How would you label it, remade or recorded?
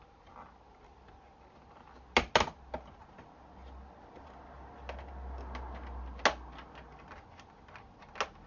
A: recorded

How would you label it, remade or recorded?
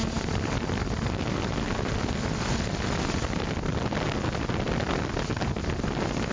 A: recorded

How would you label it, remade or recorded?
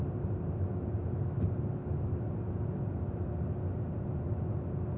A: recorded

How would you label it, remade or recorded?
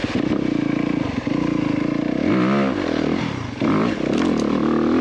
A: recorded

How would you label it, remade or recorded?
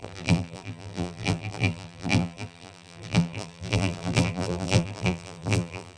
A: remade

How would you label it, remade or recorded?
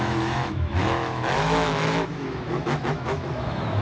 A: remade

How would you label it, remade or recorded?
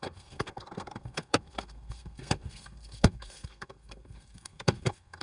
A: remade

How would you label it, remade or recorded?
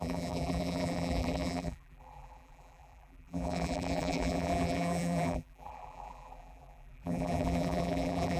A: remade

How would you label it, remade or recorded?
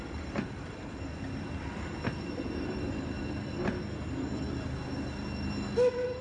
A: recorded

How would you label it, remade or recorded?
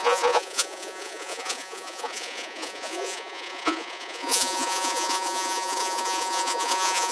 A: remade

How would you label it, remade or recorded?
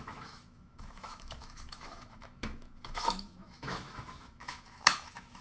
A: remade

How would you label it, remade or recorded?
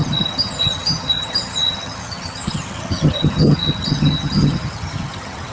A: remade